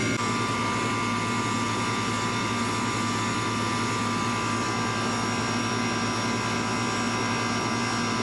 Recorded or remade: recorded